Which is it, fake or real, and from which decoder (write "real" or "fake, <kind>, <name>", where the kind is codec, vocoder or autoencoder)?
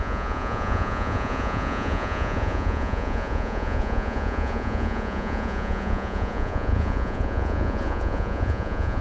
fake, vocoder, Vocos